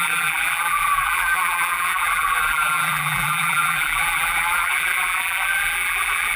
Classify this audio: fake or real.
fake